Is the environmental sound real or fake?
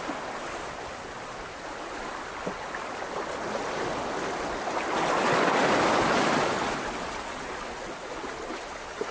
real